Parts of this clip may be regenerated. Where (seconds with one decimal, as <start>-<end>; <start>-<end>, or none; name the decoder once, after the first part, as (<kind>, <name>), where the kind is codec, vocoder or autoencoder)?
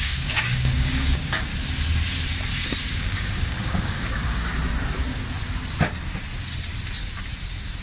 0.0-1.5 (codec, DAC); 2.9-4.5